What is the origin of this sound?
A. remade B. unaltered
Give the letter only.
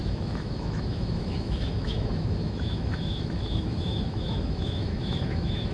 A